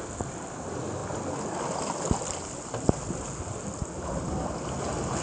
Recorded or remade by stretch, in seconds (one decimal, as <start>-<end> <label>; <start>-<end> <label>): 0.0-5.2 recorded